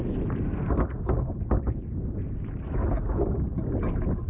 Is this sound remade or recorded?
recorded